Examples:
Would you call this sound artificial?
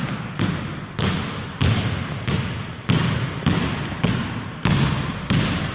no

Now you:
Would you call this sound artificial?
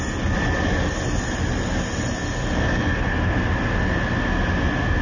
no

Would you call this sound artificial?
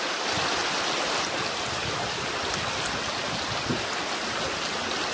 no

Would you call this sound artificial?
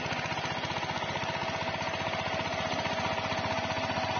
no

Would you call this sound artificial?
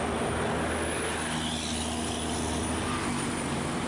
no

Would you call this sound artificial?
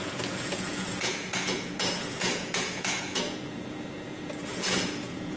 yes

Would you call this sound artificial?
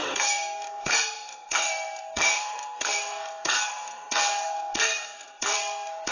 yes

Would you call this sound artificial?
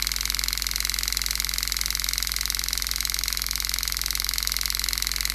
no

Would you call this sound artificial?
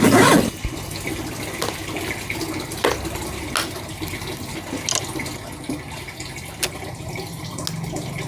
no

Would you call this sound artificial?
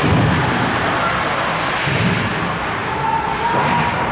no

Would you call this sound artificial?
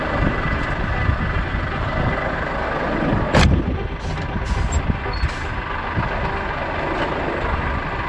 no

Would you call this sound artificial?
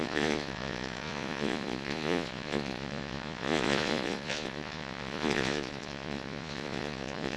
yes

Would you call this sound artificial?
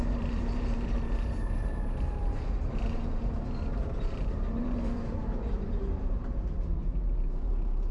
yes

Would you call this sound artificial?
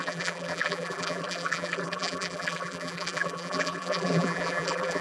yes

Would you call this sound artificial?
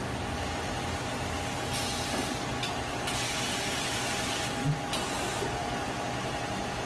no